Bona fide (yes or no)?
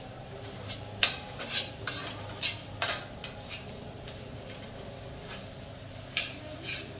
yes